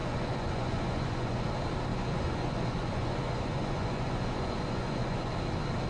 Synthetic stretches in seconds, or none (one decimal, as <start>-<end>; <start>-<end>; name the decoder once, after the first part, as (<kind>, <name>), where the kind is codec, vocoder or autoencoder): 0.0-1.5 (vocoder, Vocos); 1.9-5.3